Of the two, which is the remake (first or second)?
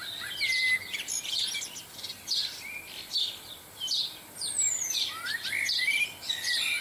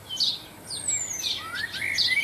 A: first